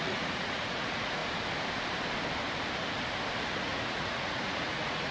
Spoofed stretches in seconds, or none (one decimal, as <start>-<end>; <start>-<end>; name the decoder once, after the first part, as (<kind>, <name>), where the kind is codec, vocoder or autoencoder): 0.0-1.2 (vocoder, Vocos); 3.3-5.1